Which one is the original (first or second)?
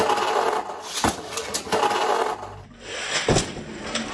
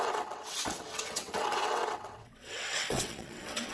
first